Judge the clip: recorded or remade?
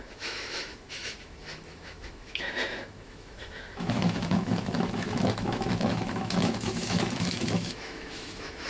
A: remade